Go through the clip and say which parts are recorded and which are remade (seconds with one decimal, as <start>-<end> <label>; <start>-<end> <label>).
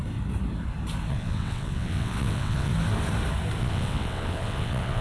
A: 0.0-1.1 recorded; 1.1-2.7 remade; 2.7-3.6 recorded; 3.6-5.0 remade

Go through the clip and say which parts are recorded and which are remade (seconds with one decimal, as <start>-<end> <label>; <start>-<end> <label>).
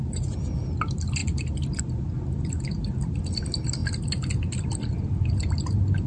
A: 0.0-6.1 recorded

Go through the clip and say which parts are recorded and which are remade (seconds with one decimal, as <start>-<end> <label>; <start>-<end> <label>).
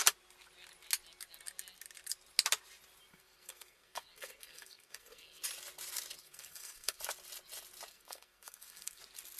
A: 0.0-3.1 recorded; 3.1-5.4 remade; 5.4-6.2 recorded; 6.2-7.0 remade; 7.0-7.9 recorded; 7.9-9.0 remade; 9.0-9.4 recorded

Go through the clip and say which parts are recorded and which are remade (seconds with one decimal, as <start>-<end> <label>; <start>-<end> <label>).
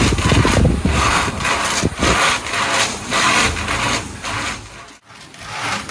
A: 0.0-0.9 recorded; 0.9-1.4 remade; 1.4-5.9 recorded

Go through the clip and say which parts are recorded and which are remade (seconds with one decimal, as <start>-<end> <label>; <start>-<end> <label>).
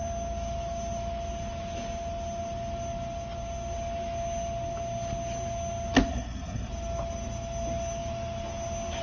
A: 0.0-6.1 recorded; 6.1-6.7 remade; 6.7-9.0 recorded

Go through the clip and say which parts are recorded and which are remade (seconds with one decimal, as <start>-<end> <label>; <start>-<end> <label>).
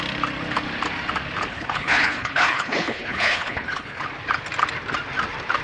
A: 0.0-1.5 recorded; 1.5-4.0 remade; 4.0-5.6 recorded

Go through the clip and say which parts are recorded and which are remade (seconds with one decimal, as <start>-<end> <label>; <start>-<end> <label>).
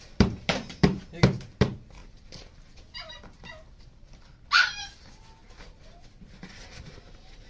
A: 0.0-2.0 recorded; 2.0-3.1 remade; 3.1-7.5 recorded